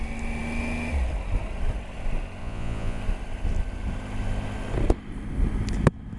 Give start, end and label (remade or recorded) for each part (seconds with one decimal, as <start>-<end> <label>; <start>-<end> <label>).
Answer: 0.0-2.4 recorded; 2.4-3.0 remade; 3.0-6.2 recorded

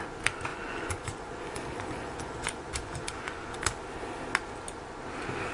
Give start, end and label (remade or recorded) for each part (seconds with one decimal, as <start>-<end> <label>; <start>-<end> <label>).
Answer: 0.0-0.5 recorded; 0.5-3.8 remade; 3.8-5.5 recorded

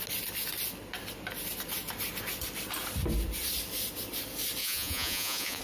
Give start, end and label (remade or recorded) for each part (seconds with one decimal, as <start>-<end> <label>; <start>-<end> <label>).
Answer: 0.0-4.6 recorded; 4.6-5.6 remade

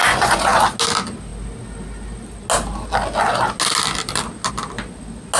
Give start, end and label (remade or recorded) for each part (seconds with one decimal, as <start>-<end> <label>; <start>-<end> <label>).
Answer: 0.0-0.6 remade; 0.6-5.4 recorded

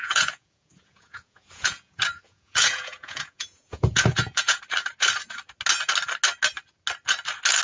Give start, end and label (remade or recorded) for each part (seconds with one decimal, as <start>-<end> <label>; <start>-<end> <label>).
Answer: 0.0-4.6 remade; 4.6-7.6 recorded

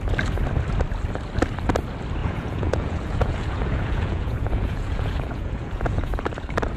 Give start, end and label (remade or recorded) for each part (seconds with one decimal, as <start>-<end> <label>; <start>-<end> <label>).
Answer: 0.0-2.2 recorded; 2.2-6.3 remade; 6.3-6.8 recorded

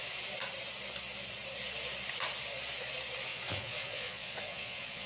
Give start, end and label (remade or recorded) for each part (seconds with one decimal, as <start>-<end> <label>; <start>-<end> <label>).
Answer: 0.0-3.3 recorded; 3.3-5.1 remade